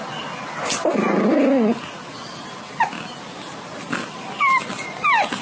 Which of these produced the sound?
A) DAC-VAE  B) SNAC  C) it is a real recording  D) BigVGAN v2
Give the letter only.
C